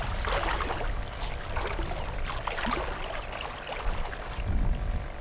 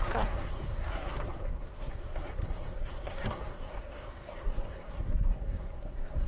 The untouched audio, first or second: first